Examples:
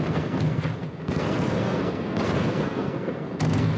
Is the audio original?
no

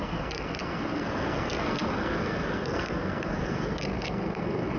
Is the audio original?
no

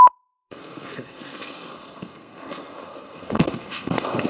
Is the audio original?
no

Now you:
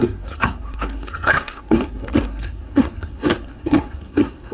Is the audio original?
no